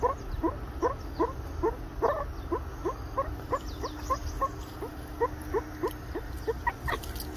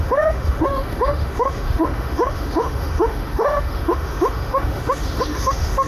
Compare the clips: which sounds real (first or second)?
first